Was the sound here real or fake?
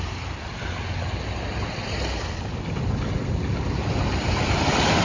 real